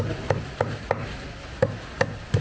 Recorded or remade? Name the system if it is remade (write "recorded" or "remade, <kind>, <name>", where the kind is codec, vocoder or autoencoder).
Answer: recorded